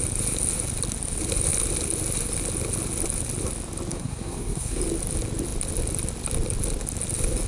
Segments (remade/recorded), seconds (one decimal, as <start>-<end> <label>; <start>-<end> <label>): 0.0-3.9 recorded; 3.9-4.8 remade; 4.8-7.5 recorded